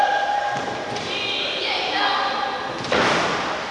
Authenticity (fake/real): real